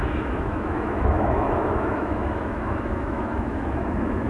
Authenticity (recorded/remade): remade